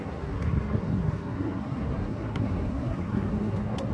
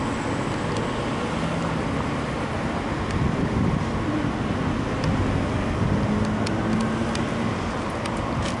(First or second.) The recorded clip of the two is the second